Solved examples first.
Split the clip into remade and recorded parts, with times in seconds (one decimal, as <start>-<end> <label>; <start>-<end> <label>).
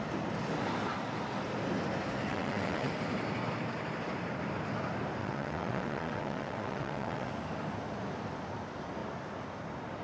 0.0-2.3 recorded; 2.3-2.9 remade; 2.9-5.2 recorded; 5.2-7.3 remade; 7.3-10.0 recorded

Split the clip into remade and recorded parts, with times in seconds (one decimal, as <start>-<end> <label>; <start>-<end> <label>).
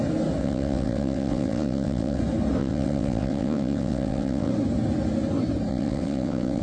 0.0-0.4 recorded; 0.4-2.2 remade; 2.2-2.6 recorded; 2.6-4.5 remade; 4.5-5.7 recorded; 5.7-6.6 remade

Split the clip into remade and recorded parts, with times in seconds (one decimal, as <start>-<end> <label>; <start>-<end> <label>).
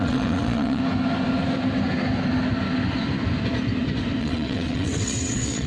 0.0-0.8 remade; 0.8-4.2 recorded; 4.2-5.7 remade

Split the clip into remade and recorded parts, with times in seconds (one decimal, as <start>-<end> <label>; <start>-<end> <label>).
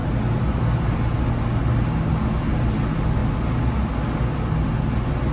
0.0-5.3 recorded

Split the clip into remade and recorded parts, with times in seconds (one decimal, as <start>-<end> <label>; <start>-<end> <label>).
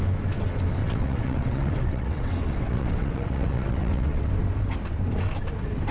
0.0-0.8 recorded; 0.8-4.3 remade; 4.3-5.9 recorded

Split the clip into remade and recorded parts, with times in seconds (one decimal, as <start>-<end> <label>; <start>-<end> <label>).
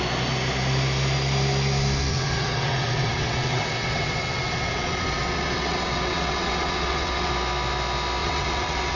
0.0-2.1 recorded; 2.1-7.3 remade; 7.3-8.2 recorded; 8.2-9.0 remade